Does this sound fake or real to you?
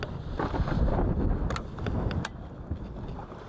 real